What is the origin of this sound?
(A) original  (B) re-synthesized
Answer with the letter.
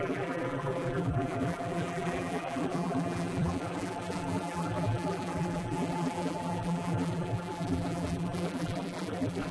B